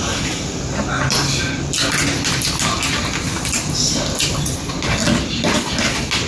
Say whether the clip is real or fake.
real